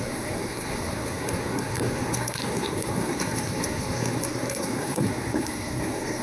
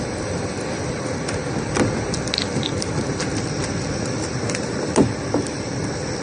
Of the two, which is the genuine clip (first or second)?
second